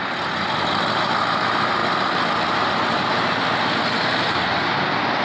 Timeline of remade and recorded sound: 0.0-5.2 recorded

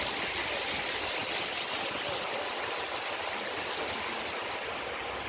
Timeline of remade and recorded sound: 0.0-5.3 recorded

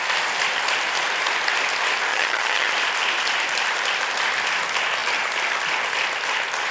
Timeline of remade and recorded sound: 0.0-2.1 recorded; 2.1-2.7 remade; 2.7-6.7 recorded

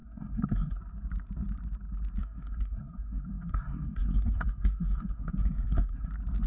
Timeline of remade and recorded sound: 0.0-0.8 remade; 0.8-2.2 recorded; 2.2-6.1 remade; 6.1-6.5 recorded

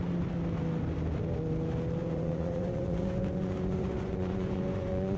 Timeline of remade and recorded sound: 0.0-2.0 recorded; 2.0-5.2 remade

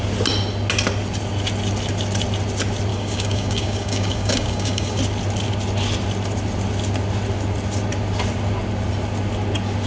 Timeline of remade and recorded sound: 0.0-2.9 recorded; 2.9-5.0 remade; 5.0-9.9 recorded

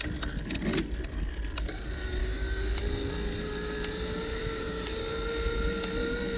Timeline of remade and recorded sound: 0.0-2.2 recorded; 2.2-2.8 remade; 2.8-4.4 recorded; 4.4-5.1 remade; 5.1-6.4 recorded